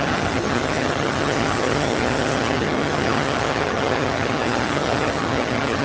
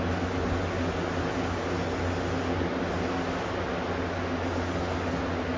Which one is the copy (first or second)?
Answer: first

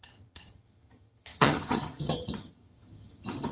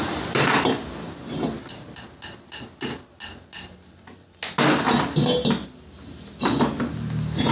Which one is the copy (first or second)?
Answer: first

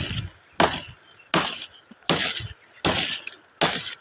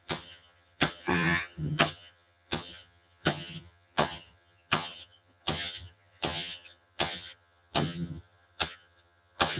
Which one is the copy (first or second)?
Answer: second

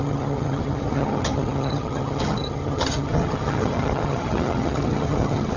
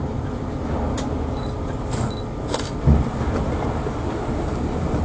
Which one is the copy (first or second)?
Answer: first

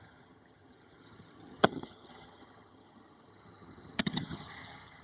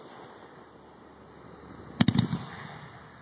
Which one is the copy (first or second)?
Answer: first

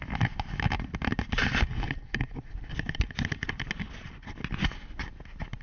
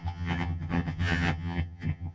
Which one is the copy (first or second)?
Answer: second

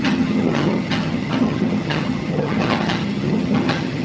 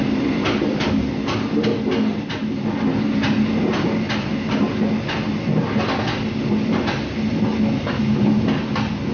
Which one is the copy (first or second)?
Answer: first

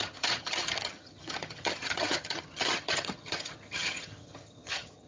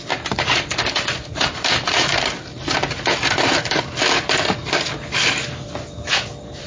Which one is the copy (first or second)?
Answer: first